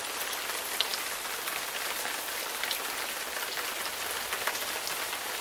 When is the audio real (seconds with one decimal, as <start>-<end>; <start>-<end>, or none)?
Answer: 0.0-5.4